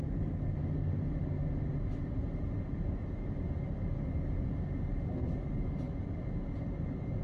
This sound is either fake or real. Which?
real